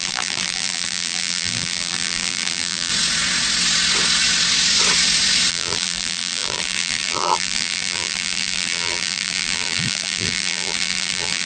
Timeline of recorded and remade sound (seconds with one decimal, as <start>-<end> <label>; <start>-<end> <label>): 0.0-2.9 remade; 2.9-5.5 recorded; 5.5-11.5 remade